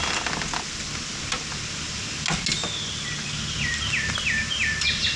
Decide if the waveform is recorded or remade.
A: recorded